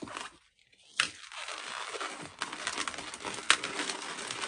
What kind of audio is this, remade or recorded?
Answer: recorded